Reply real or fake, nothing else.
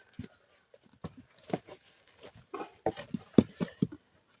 fake